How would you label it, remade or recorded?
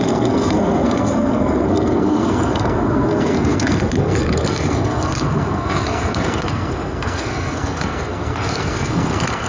remade